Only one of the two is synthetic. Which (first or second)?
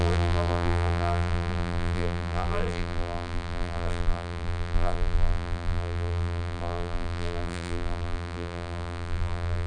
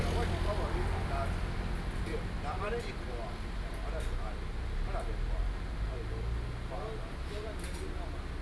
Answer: first